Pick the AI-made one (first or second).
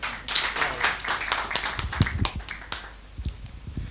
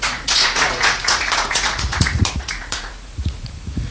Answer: second